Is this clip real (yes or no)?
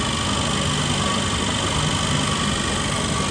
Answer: yes